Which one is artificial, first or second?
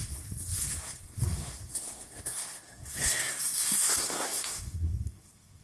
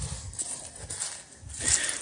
first